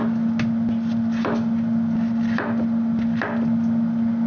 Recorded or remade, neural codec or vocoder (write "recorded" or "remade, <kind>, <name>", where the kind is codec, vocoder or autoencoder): recorded